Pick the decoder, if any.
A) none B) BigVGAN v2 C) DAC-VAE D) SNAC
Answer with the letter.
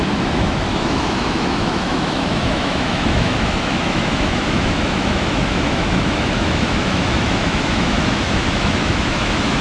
C